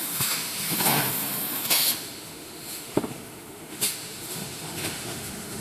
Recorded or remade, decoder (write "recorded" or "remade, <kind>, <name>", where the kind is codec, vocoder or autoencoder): remade, autoencoder, DAC-VAE